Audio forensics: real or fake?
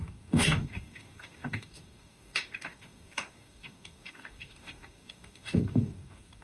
fake